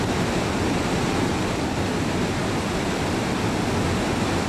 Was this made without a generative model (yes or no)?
no